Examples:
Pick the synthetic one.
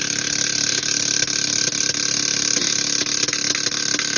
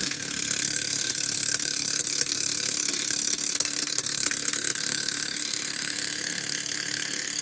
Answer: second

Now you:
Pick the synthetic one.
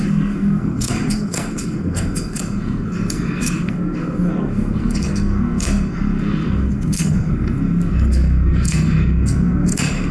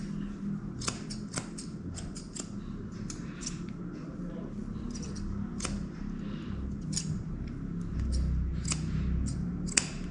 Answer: first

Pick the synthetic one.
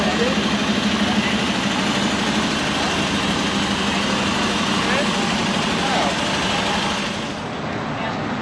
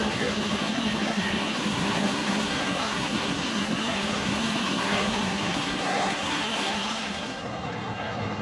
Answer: second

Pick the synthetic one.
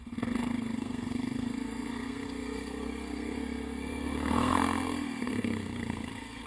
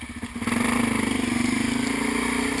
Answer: first